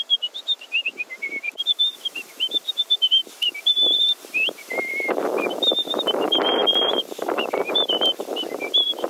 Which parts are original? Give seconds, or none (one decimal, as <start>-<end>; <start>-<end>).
none